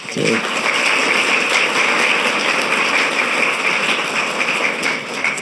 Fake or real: real